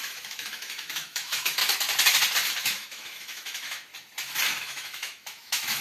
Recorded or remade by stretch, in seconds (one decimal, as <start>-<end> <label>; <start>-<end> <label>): 0.0-1.6 remade; 1.6-2.6 recorded; 2.6-3.9 remade; 3.9-4.6 recorded; 4.6-5.8 remade